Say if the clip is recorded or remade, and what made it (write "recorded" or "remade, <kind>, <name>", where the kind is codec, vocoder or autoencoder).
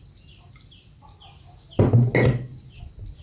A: recorded